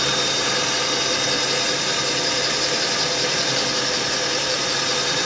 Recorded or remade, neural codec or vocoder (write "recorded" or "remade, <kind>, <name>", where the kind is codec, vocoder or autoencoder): recorded